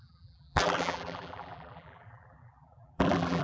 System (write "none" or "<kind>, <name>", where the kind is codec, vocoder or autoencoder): vocoder, BigVGAN v2